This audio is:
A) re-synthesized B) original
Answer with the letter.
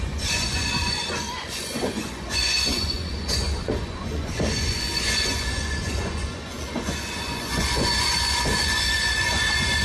A